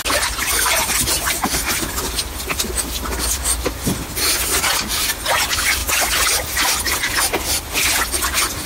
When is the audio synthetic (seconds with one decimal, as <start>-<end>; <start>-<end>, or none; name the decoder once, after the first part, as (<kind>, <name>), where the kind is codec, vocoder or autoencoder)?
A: none